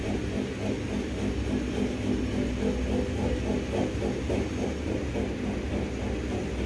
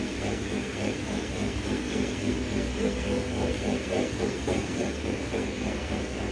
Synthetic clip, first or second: second